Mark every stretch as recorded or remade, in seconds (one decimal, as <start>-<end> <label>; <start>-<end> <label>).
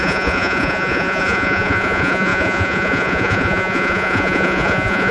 0.0-5.1 remade